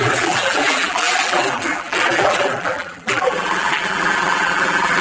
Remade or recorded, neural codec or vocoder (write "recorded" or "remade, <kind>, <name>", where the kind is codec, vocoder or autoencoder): remade, vocoder, BigVGAN v2